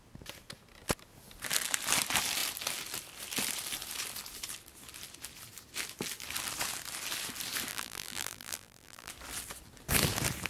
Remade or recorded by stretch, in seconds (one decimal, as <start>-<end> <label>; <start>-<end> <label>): 0.0-7.7 recorded; 7.7-9.1 remade; 9.1-10.5 recorded